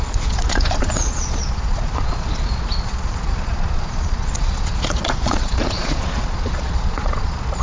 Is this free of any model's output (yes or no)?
no